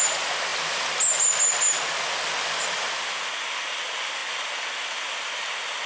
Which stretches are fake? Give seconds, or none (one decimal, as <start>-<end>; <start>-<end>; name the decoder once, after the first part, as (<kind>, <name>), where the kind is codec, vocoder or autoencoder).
none